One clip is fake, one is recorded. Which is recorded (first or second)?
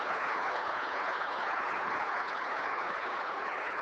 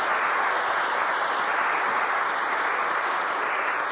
second